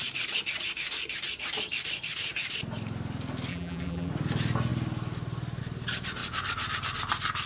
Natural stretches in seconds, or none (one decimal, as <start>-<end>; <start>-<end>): 0.0-3.5; 4.1-7.5

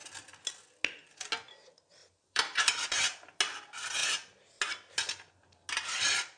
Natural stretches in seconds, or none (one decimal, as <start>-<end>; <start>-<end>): 0.0-2.0; 3.4-6.4

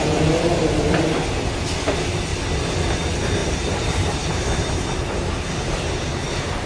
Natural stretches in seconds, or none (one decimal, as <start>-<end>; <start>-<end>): 0.0-3.4; 4.6-6.7

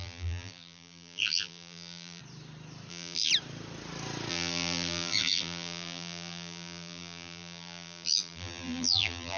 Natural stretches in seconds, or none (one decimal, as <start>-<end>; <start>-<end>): 2.2-2.9; 3.3-4.3

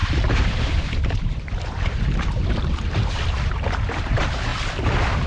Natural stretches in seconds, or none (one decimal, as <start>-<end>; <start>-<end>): 4.5-5.3

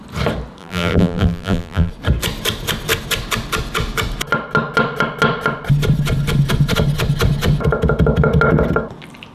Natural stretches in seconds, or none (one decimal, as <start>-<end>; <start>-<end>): 0.0-0.6; 1.9-9.3

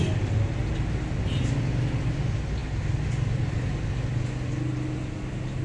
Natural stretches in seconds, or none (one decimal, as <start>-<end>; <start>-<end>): 0.0-5.6